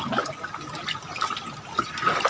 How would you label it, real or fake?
real